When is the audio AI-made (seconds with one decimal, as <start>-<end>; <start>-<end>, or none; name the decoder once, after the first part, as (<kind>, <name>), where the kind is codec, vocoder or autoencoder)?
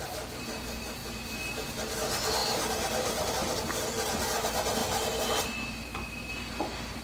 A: none